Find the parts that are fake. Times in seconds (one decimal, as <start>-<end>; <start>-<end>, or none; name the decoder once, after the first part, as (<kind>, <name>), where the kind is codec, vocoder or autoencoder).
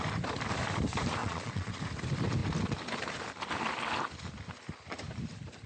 1.2-1.8 (vocoder, Vocos)